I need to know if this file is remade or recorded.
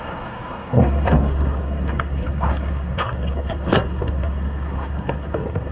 remade